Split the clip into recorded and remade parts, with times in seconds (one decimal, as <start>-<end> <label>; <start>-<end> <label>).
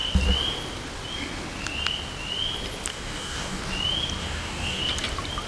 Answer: 0.0-2.9 recorded; 2.9-3.6 remade; 3.6-4.2 recorded; 4.2-4.8 remade; 4.8-5.5 recorded